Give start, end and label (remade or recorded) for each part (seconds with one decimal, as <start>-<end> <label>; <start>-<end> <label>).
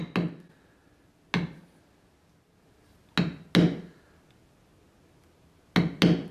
0.0-6.3 recorded